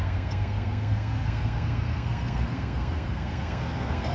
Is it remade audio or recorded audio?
remade